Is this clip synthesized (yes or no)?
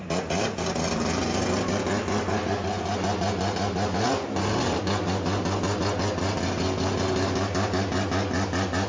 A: no